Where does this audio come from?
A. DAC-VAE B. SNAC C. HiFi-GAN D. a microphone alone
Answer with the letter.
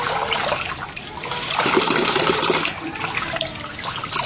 D